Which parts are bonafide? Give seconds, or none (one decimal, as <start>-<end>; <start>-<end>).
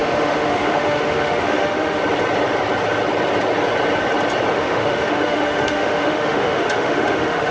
2.0-4.5